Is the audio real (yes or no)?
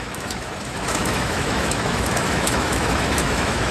no